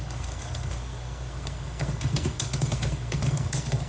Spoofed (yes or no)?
yes